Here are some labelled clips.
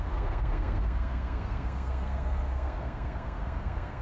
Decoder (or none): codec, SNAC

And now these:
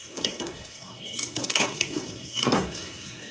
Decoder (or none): codec, SNAC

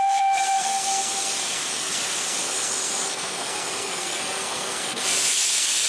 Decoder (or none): codec, SNAC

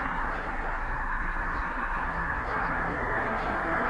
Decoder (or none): codec, SNAC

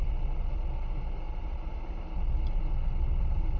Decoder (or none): none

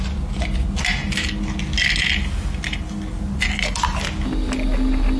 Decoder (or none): none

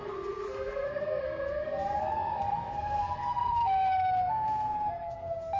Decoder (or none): codec, SNAC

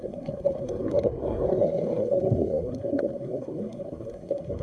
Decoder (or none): codec, SNAC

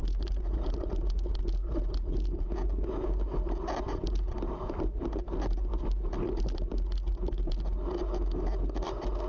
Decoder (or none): none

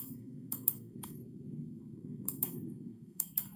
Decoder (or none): codec, SNAC